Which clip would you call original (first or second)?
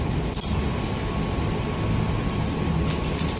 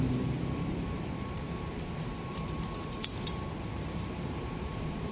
first